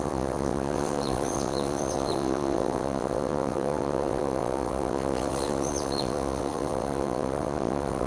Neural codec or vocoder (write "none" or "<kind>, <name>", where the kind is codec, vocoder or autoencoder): vocoder, WaveNeXt